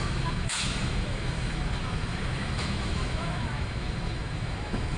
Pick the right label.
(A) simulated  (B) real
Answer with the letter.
A